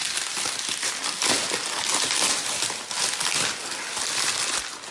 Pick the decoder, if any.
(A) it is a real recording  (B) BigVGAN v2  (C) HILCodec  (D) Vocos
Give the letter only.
A